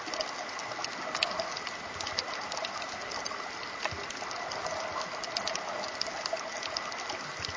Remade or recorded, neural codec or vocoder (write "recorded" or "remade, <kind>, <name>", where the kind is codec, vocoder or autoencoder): recorded